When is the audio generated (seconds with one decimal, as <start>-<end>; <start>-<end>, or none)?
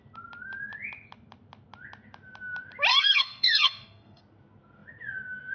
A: 2.9-4.2